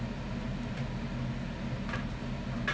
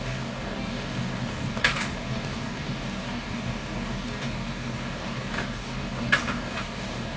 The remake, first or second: second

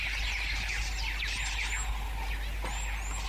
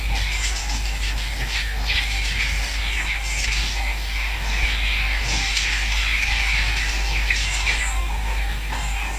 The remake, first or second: second